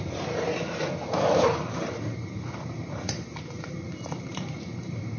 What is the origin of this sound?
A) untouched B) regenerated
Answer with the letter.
B